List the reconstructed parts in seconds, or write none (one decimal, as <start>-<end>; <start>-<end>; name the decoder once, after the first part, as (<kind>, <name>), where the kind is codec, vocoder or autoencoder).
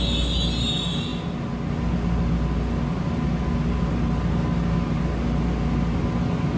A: none